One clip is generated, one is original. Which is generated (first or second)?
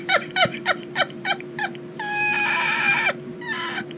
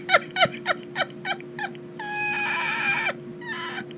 first